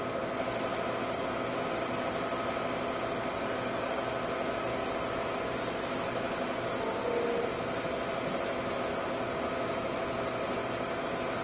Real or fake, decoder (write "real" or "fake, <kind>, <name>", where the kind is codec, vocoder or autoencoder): real